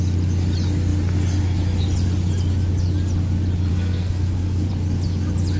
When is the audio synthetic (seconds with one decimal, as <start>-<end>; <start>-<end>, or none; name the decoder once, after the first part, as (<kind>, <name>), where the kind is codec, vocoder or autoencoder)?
3.7-4.7 (codec, SNAC)

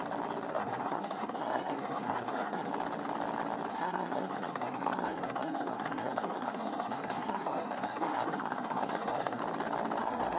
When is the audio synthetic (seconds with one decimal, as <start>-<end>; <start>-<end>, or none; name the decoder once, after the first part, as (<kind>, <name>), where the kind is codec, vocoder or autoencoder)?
0.5-2.7 (codec, SNAC); 3.7-9.4; 10.0-10.4

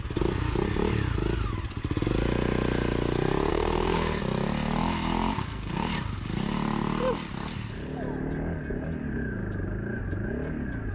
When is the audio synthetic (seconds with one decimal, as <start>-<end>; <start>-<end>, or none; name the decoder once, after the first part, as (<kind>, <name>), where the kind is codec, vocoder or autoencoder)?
3.5-4.2 (codec, SNAC); 5.3-5.9

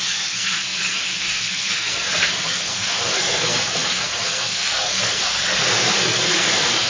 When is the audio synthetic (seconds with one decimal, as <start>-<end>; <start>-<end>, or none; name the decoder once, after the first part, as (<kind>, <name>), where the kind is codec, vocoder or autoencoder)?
0.0-6.9 (codec, SNAC)

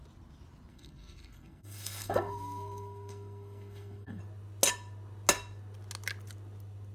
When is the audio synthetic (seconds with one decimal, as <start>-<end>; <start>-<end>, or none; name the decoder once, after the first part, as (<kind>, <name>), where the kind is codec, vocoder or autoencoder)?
0.7-4.2 (codec, SNAC)

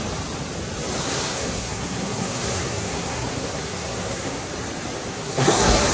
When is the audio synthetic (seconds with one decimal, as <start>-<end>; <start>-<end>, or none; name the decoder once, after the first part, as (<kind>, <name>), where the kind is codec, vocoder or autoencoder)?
1.0-4.5 (codec, SNAC); 5.1-5.9

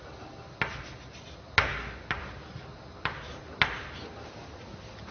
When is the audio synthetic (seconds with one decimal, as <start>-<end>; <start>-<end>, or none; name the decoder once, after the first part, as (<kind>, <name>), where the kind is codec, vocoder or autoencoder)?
none

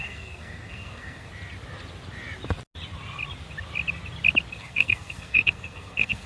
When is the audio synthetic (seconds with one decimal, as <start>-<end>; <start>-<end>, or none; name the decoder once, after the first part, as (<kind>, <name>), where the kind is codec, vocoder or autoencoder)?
0.0-1.3 (codec, SNAC); 4.5-6.3